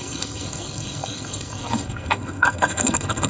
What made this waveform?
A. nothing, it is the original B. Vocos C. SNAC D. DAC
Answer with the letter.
C